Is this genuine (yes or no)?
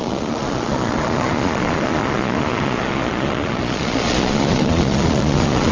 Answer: no